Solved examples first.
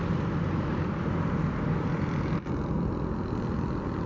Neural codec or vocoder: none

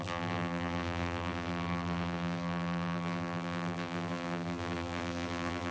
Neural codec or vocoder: vocoder, BigVGAN v2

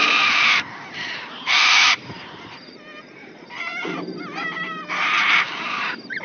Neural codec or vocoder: vocoder, BigVGAN v2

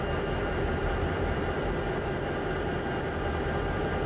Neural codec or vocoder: vocoder, BigVGAN v2